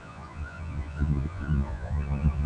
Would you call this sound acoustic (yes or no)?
no